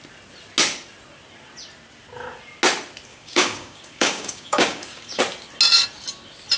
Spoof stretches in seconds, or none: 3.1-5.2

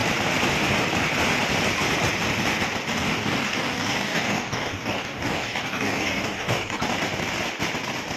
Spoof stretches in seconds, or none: 2.9-6.8

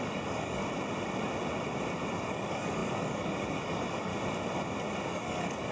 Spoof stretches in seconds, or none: 0.0-0.6; 2.1-4.1; 5.1-5.7

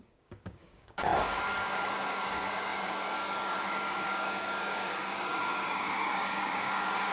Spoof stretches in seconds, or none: 0.0-7.1